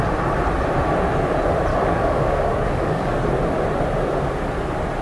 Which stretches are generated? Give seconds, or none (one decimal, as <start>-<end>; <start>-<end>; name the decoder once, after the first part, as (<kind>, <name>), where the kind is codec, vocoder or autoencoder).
1.7-3.3 (codec, DAC)